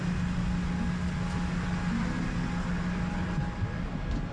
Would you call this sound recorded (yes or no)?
yes